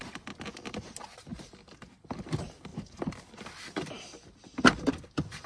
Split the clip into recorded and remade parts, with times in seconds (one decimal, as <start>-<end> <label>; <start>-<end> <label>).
0.0-1.3 recorded; 1.3-2.0 remade; 2.0-2.7 recorded; 2.7-3.8 remade; 3.8-5.5 recorded